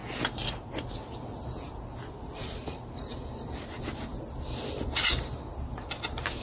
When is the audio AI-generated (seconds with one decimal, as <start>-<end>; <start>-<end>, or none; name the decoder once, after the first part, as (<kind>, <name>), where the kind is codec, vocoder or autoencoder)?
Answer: 2.4-4.1 (vocoder, BigVGAN v2); 5.2-6.4